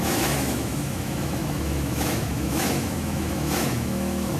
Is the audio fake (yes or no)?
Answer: yes